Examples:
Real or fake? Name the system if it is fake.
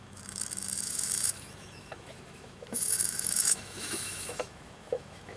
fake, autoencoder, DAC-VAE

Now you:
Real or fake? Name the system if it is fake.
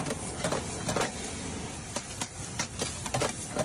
real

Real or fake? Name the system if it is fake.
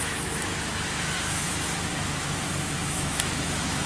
fake, autoencoder, DAC-VAE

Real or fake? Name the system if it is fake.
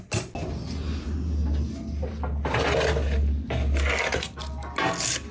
real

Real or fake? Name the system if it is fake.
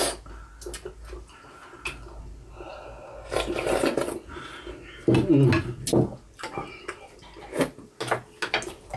real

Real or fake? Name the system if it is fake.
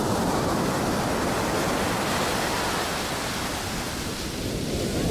real